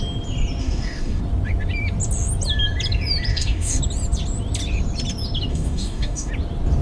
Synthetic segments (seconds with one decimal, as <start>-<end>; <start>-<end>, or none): 0.6-1.2; 3.3-3.8; 5.5-6.3